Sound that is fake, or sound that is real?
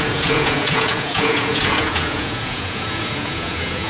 fake